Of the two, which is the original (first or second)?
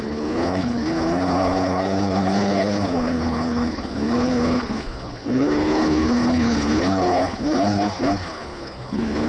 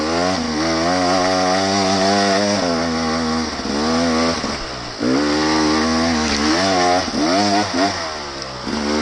second